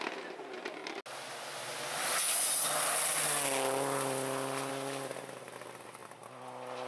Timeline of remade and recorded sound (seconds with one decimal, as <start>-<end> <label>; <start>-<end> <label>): 0.0-6.9 recorded